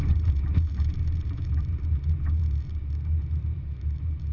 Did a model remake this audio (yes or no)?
yes